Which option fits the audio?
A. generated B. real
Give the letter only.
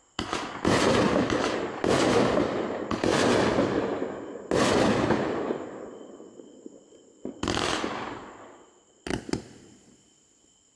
B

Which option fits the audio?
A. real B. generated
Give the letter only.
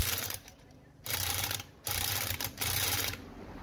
B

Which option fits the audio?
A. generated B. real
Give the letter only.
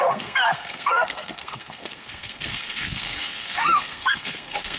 A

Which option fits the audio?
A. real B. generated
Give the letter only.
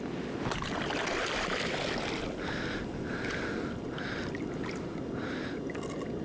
A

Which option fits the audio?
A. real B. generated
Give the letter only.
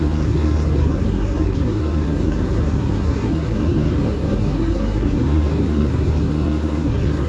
B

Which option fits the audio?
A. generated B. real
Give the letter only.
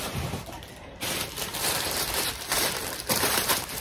A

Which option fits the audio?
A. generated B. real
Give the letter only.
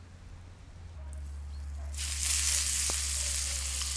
B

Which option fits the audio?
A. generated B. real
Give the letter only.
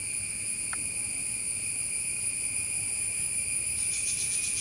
B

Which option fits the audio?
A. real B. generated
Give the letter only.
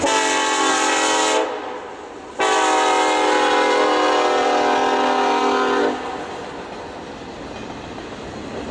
A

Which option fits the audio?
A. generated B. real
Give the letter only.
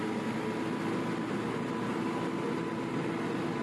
B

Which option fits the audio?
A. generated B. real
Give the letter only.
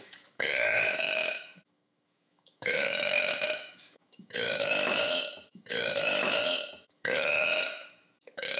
A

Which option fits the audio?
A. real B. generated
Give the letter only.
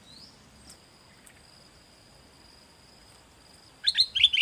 A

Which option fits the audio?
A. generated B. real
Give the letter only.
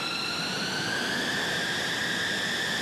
A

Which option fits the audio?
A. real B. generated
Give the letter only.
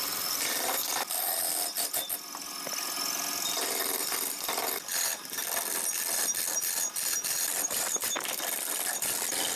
B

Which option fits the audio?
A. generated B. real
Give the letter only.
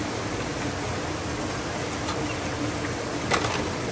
B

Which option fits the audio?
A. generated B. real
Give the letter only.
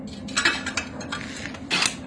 B